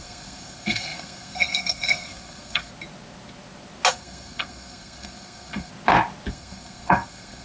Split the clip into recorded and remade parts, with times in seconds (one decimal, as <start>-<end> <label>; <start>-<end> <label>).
0.0-2.7 remade; 2.7-3.9 recorded; 3.9-5.7 remade; 5.7-6.3 recorded; 6.3-7.4 remade

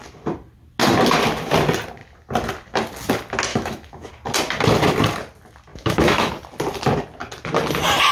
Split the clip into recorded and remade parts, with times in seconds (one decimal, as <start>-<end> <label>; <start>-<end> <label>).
0.0-3.5 recorded; 3.5-4.1 remade; 4.1-5.7 recorded; 5.7-6.3 remade; 6.3-8.1 recorded